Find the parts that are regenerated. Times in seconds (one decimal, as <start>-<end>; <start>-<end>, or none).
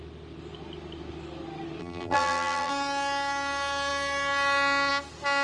1.8-2.7